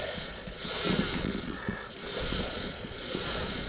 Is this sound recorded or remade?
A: remade